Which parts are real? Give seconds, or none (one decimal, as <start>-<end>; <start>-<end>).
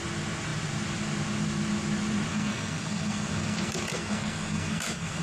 0.0-2.3